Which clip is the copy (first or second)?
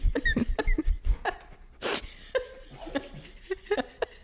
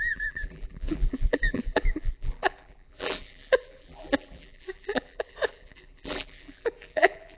second